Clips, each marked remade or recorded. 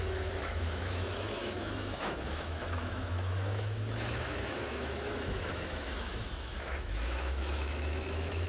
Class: remade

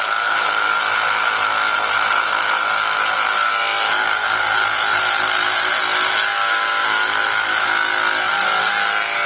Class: recorded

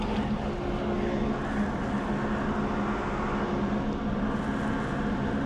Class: recorded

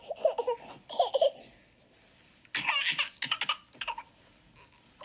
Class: recorded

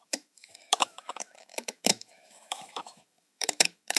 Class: remade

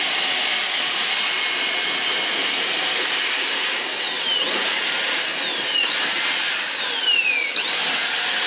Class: recorded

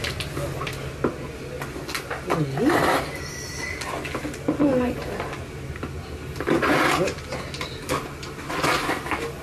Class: recorded